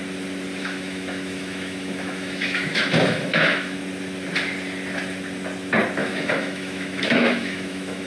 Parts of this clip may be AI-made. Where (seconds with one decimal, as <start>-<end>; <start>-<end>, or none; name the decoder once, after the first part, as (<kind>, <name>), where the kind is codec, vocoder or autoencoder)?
0.6-3.8 (autoencoder, DAC-VAE); 6.0-8.1